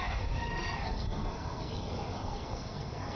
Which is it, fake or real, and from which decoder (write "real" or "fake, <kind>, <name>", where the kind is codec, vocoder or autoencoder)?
fake, codec, SNAC